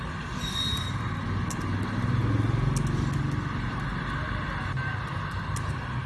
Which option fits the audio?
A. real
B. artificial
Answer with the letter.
A